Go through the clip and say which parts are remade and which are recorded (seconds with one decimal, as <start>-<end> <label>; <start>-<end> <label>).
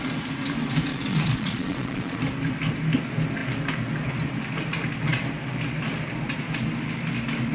0.0-0.9 recorded; 0.9-2.2 remade; 2.2-7.5 recorded